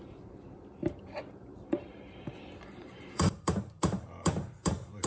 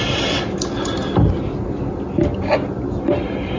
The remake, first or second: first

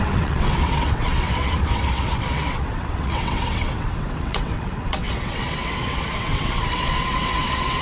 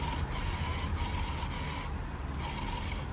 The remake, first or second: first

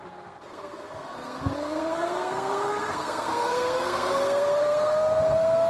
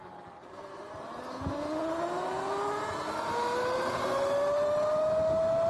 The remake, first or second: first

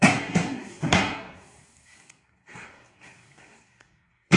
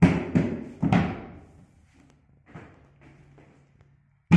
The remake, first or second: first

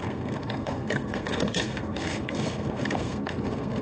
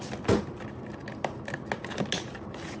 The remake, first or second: first